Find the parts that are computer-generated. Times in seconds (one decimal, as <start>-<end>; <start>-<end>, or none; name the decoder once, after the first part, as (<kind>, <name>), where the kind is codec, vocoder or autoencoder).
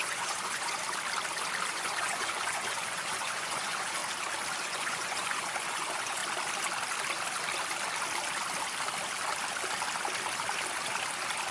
0.0-0.8 (vocoder, Vocos); 1.7-4.0; 4.6-6.2